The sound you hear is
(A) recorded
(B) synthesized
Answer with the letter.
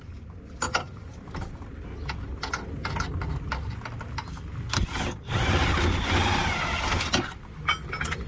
A